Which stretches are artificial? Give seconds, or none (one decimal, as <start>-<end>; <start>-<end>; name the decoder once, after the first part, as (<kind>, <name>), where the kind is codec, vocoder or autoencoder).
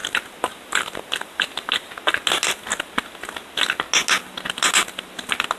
none